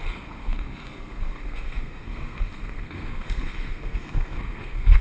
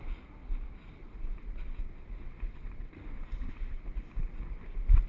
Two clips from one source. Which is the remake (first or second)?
first